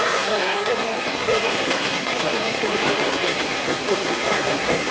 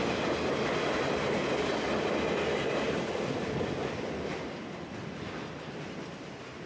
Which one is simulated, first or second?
first